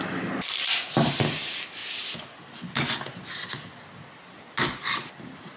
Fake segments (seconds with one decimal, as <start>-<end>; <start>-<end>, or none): none